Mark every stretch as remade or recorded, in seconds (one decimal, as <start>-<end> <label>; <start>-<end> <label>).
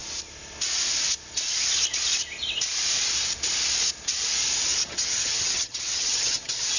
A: 0.0-4.8 recorded; 4.8-6.8 remade